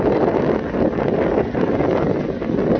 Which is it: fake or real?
real